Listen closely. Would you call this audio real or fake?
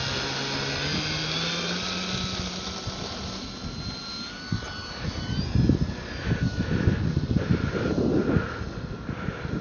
real